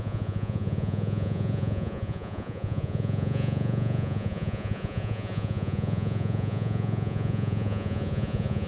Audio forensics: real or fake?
fake